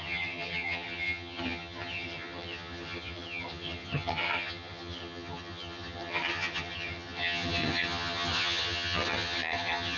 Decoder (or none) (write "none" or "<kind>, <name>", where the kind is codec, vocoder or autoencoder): vocoder, HiFi-GAN